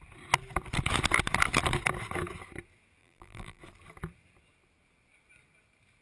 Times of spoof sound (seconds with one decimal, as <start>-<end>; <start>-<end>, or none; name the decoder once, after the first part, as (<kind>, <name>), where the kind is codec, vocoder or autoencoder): 3.0-3.6 (vocoder, BigVGAN v2)